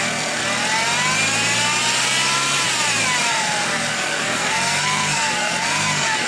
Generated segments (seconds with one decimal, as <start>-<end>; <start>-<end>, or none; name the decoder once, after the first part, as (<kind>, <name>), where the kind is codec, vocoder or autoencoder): 0.0-0.4 (codec, SNAC); 3.3-6.3